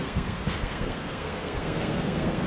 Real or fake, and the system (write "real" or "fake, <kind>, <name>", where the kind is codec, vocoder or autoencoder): fake, codec, SNAC